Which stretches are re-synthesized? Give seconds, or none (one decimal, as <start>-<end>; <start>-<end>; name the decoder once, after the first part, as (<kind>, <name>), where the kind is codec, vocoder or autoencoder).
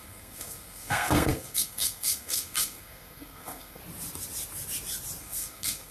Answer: 0.0-3.8 (codec, SNAC); 5.2-5.9